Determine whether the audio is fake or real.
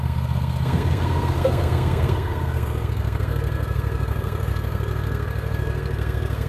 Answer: fake